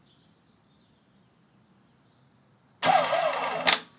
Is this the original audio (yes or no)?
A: yes